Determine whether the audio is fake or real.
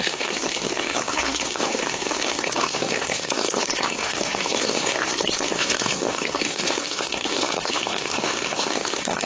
fake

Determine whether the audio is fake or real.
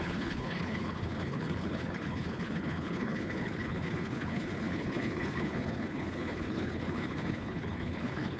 fake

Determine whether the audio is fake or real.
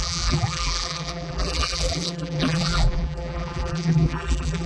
fake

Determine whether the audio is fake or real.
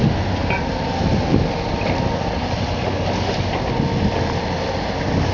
real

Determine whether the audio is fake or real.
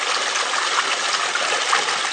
real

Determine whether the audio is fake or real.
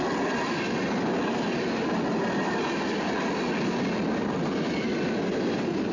real